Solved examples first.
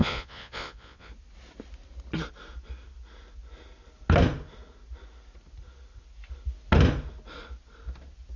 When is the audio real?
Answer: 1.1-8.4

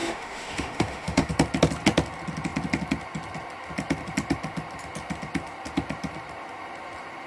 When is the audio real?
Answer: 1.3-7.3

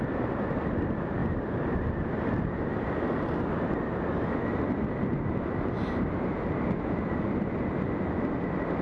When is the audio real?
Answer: 0.0-8.8

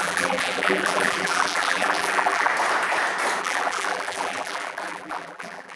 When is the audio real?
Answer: 2.5-3.4

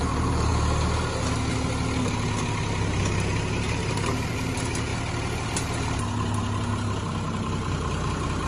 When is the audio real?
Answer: 0.5-3.5; 4.9-5.5